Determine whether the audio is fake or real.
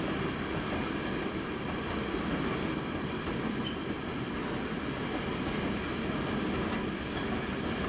real